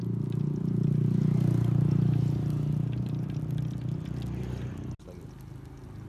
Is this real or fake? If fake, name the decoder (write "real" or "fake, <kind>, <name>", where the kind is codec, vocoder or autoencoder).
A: real